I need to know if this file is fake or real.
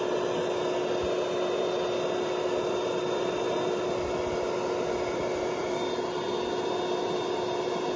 real